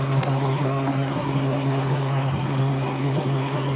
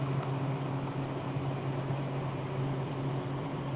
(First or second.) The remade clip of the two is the first